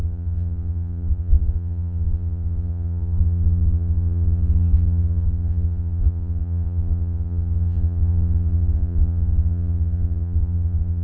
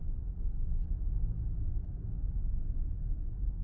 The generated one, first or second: first